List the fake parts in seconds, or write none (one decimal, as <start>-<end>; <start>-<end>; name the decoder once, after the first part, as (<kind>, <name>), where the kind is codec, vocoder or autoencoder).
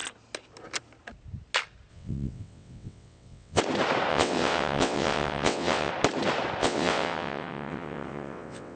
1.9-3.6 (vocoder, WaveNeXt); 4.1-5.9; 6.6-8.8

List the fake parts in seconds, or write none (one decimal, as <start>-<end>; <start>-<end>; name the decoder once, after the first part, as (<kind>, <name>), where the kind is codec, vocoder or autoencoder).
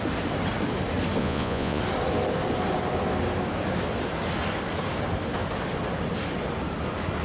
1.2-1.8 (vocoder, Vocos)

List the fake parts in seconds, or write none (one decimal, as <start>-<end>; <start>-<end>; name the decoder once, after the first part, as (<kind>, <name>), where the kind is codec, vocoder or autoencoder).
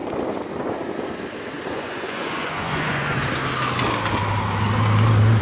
1.7-3.2 (vocoder, Vocos)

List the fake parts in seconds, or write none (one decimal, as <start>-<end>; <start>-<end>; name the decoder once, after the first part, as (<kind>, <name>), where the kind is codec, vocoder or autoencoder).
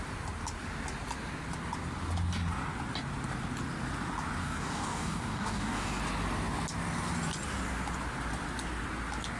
4.4-6.0 (codec, DAC)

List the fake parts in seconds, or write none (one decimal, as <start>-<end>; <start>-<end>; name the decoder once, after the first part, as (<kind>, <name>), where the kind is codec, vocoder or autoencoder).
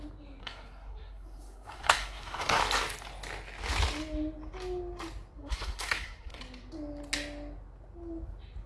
0.4-2.6 (codec, SNAC); 5.4-6.4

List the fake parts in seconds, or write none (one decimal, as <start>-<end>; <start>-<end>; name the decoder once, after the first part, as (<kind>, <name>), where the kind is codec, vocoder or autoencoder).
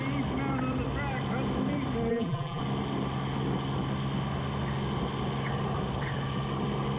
2.1-2.6 (vocoder, BigVGAN v2)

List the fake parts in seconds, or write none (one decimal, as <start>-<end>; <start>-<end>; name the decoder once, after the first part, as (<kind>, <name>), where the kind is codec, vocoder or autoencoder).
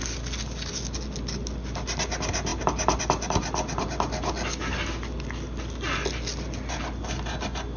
none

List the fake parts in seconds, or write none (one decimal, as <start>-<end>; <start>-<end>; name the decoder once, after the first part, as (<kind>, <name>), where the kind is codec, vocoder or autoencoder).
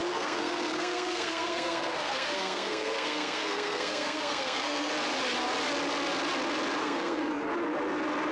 0.0-4.9 (codec, SNAC); 6.8-7.5